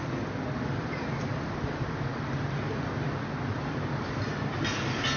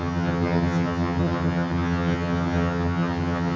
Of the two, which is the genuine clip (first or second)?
first